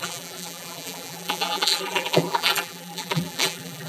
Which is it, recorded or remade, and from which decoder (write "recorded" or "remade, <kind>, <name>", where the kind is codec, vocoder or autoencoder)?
remade, vocoder, BigVGAN v2